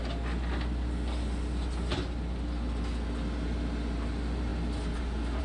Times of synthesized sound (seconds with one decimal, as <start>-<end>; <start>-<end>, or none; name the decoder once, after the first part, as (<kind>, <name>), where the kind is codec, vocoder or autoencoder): none